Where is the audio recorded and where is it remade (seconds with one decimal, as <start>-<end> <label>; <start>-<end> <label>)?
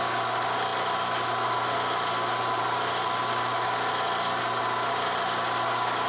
0.0-6.1 recorded